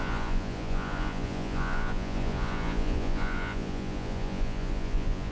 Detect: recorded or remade remade